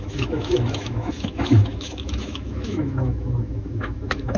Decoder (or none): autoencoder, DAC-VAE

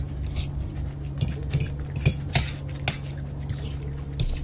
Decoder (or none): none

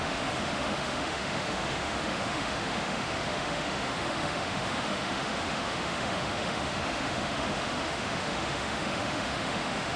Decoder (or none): autoencoder, DAC-VAE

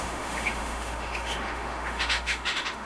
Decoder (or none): autoencoder, DAC-VAE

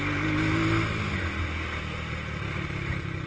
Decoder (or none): none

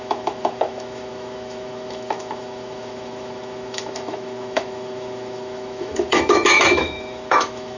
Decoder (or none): autoencoder, DAC-VAE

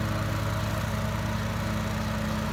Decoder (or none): none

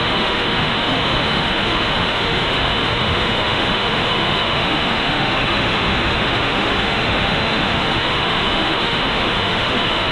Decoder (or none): autoencoder, DAC-VAE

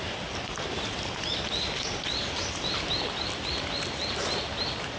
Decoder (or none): none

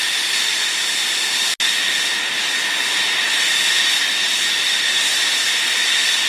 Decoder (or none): none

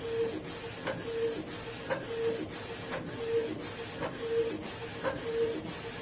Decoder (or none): none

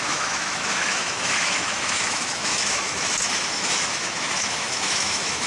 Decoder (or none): autoencoder, DAC-VAE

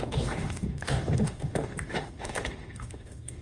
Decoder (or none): autoencoder, DAC-VAE